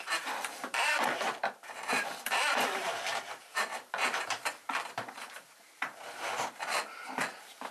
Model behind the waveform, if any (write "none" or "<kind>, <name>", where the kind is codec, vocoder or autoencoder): vocoder, BigVGAN v2